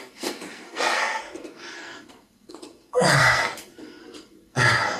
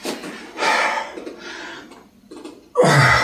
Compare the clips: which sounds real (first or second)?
second